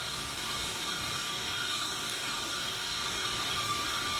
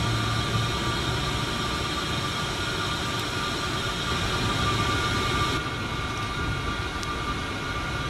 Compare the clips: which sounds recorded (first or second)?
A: second